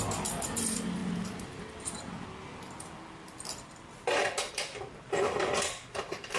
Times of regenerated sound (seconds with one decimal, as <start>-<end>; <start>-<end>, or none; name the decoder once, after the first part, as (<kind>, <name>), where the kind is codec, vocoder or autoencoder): 0.0-1.0 (vocoder, BigVGAN v2); 4.5-6.4